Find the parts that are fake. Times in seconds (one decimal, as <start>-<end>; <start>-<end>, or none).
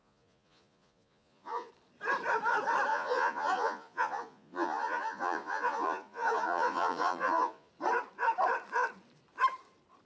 0.0-1.7; 2.9-7.7